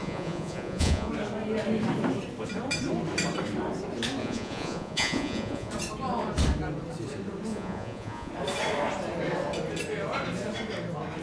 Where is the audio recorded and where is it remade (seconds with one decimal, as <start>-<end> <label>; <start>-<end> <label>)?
0.0-1.1 remade; 1.1-4.2 recorded; 4.2-5.7 remade; 5.7-7.5 recorded; 7.5-8.3 remade; 8.3-11.2 recorded